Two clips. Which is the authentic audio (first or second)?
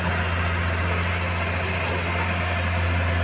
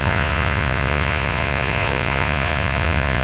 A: first